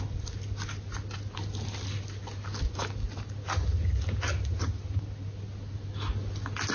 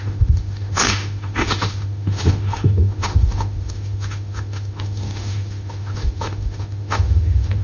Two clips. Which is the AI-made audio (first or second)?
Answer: second